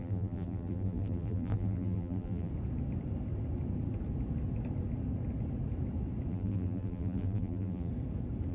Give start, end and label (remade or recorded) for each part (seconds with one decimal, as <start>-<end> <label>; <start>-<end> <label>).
0.0-2.5 remade; 2.5-6.3 recorded; 6.3-7.9 remade; 7.9-8.5 recorded